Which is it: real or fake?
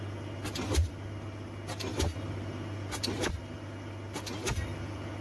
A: real